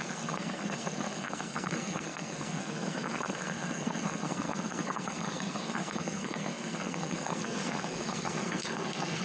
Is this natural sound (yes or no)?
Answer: no